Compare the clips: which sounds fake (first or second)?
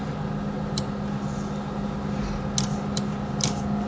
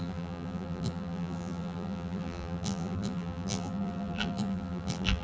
second